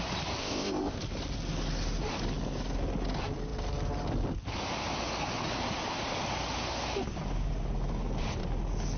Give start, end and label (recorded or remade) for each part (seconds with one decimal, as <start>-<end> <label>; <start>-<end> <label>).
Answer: 0.0-0.4 recorded; 0.4-1.0 remade; 1.0-9.0 recorded